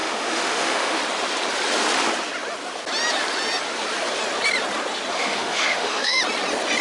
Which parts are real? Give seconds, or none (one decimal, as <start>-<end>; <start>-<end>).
1.0-5.1; 6.2-6.8